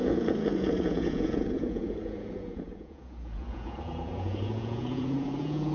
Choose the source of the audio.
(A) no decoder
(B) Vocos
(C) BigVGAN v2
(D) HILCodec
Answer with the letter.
B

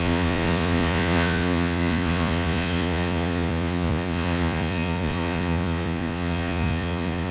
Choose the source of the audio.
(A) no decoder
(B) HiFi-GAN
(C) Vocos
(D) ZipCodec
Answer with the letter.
C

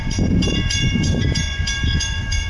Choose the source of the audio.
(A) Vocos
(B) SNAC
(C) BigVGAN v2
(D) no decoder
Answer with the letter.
A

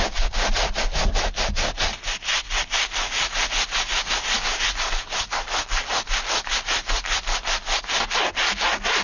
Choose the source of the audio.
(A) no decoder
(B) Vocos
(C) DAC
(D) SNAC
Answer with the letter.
A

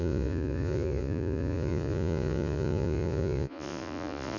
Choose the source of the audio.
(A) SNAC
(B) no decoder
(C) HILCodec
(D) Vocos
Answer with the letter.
D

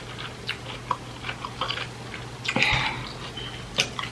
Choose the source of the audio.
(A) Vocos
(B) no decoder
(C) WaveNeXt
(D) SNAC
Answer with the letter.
B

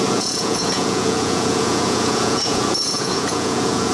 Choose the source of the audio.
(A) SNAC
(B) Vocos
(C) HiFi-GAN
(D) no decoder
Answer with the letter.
B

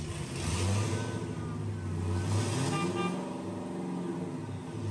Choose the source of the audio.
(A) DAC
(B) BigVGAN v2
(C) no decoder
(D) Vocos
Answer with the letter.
C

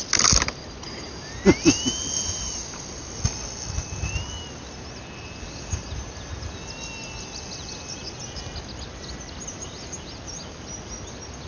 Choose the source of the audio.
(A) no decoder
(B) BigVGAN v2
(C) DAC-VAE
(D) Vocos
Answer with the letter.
A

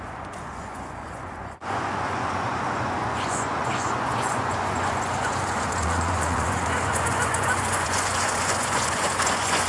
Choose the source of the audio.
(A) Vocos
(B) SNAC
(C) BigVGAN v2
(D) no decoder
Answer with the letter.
A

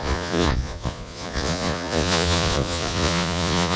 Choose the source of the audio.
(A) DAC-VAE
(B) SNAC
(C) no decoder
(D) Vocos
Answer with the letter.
D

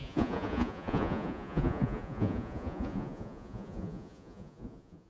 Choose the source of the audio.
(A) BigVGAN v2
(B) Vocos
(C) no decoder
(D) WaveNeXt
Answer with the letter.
B